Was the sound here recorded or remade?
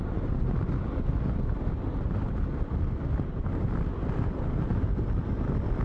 recorded